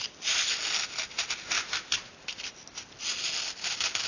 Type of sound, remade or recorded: recorded